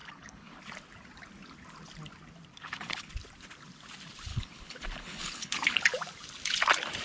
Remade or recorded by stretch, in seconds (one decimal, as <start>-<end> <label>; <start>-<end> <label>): 0.0-0.6 remade; 0.6-2.5 recorded; 2.5-3.1 remade; 3.1-4.3 recorded; 4.3-5.9 remade; 5.9-7.0 recorded